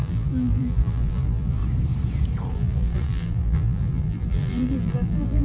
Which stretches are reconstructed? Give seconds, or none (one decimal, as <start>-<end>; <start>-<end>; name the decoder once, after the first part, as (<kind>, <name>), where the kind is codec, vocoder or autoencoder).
0.0-1.6 (vocoder, BigVGAN v2); 2.5-5.4